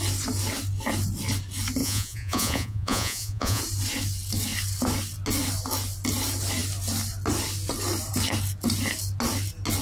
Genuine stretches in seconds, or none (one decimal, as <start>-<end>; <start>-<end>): 0.0-1.8; 3.6-9.8

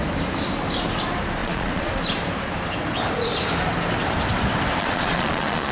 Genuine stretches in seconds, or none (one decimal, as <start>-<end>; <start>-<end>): 0.0-1.4; 2.0-4.8

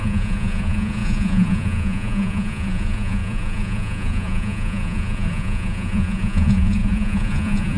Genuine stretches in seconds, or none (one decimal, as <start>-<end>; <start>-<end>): none

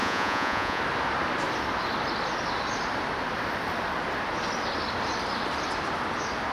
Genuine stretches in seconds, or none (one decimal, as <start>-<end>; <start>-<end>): 0.8-6.5